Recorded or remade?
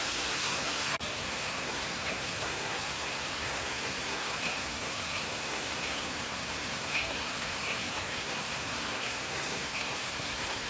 remade